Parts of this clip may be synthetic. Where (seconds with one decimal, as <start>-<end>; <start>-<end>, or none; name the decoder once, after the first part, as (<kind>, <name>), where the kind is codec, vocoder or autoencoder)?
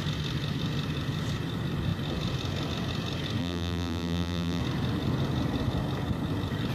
3.4-4.6 (vocoder, BigVGAN v2)